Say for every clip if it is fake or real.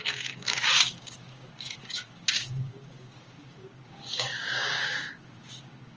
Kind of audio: fake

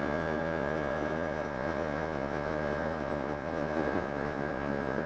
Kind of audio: fake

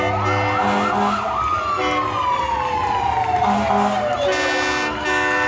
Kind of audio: real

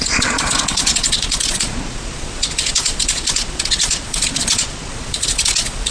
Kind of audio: fake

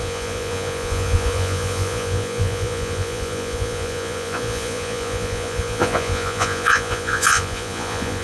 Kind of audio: fake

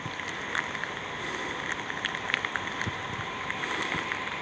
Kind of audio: real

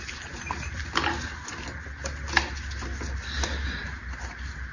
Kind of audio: real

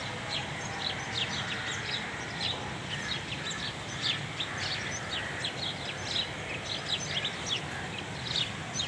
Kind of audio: real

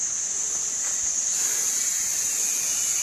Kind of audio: real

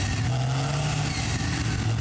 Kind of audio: real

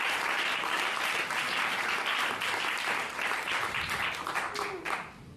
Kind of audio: fake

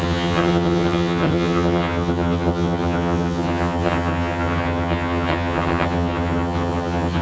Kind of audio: fake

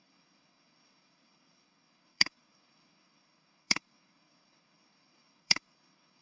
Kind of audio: fake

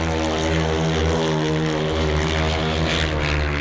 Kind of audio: real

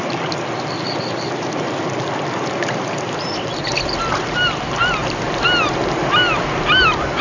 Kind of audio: real